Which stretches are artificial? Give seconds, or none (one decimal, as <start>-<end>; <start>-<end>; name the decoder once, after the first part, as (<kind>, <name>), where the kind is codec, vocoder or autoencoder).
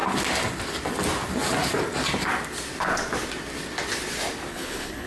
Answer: 4.5-5.1 (codec, HILCodec)